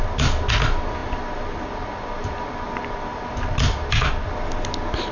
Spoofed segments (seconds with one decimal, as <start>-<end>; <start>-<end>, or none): none